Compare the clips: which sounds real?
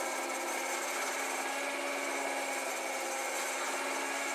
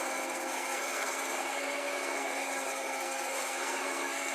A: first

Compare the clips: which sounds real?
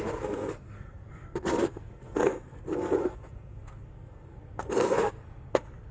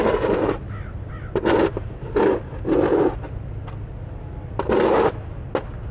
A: second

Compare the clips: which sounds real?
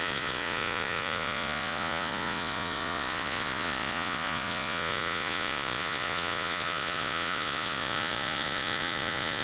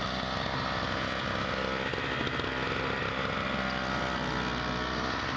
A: second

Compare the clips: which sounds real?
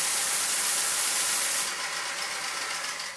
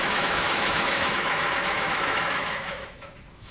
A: first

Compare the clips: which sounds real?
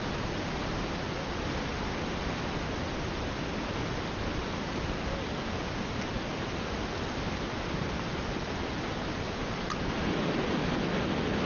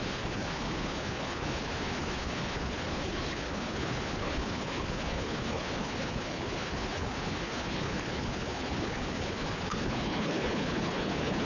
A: first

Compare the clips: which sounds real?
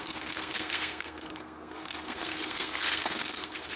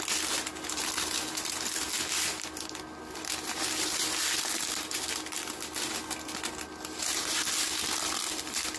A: second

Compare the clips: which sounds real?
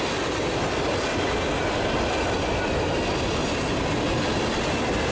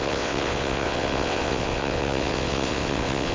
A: first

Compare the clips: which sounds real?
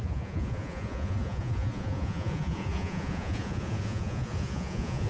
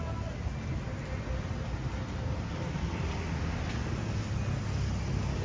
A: second